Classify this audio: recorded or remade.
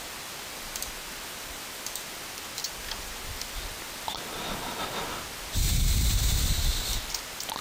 recorded